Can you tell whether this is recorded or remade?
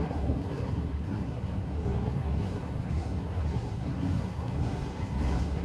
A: remade